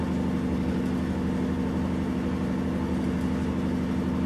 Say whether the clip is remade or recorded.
recorded